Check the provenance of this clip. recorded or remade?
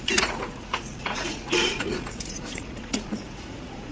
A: remade